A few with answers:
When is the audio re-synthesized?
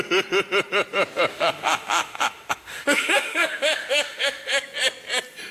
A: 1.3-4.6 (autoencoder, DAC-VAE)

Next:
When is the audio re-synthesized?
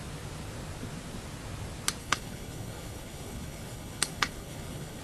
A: 2.0-5.0 (codec, HILCodec)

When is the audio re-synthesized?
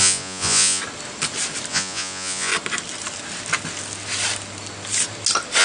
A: 0.0-0.8 (vocoder, Vocos); 1.7-2.5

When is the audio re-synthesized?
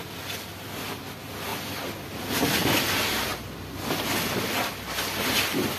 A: none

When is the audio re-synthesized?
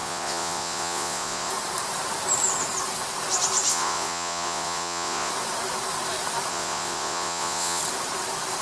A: 0.0-1.5 (vocoder, Vocos); 3.7-5.3; 6.5-7.8